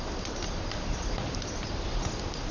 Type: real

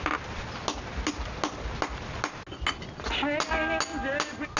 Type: real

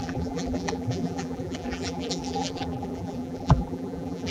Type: fake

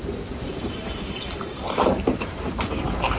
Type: fake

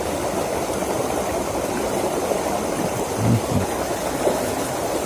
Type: real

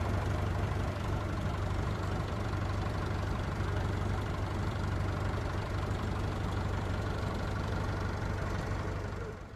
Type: fake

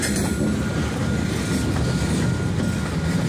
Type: real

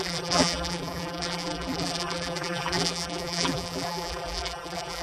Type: fake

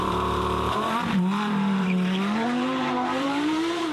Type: fake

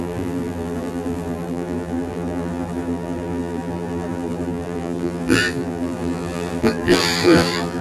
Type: fake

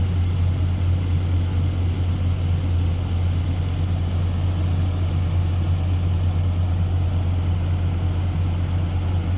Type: real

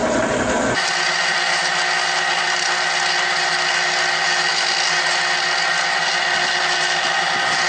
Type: real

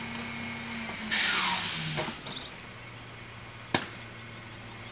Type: real